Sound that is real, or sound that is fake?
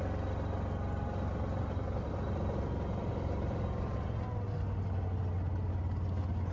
real